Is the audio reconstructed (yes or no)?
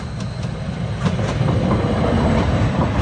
no